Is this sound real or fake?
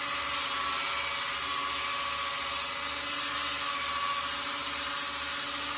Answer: real